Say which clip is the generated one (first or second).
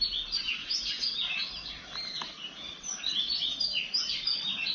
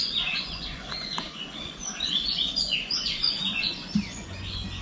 second